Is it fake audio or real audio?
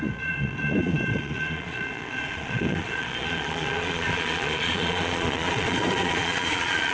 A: fake